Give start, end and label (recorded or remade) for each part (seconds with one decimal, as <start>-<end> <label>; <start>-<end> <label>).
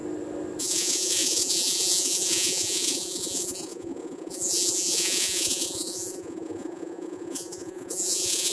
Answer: 0.0-0.6 recorded; 0.6-8.5 remade